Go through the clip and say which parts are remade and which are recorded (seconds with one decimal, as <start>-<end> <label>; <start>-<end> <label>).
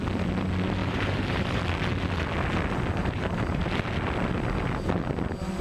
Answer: 0.0-0.8 recorded; 0.8-1.6 remade; 1.6-3.0 recorded; 3.0-3.6 remade; 3.6-5.6 recorded